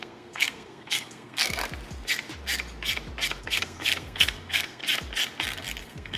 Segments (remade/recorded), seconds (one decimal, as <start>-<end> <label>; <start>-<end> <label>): 0.0-1.6 remade; 1.6-3.4 recorded; 3.4-4.8 remade; 4.8-5.8 recorded; 5.8-6.2 remade